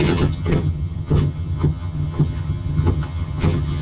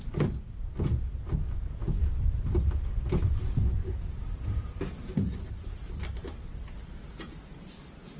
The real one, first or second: second